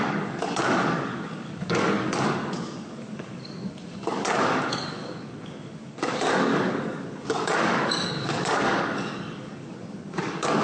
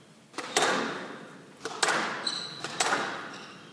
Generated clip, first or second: first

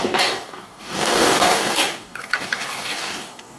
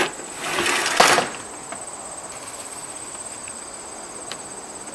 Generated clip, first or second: first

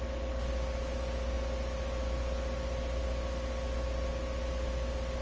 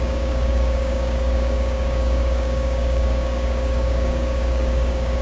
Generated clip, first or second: second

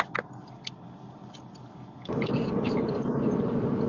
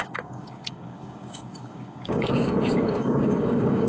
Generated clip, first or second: second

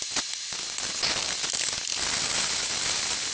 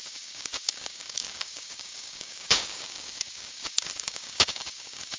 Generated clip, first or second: second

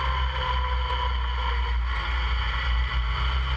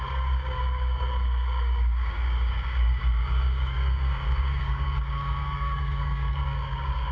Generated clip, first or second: second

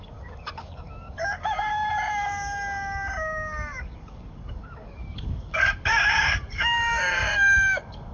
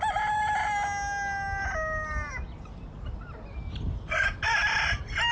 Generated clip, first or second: first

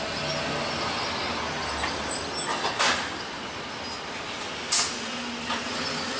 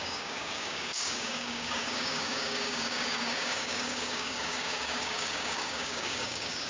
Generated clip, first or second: second